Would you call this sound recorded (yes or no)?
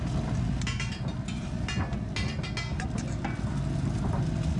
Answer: yes